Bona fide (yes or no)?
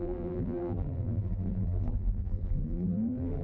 no